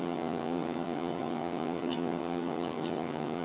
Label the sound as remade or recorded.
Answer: remade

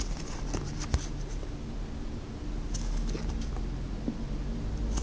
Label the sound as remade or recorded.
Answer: recorded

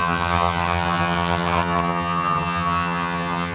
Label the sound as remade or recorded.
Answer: remade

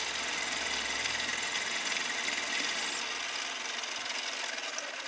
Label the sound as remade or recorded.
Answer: recorded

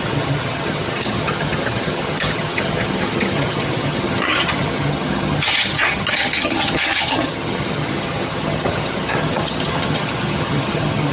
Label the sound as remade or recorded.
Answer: remade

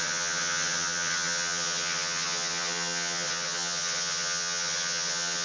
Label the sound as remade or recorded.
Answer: remade